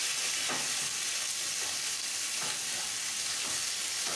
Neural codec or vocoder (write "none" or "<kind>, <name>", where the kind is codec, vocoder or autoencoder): none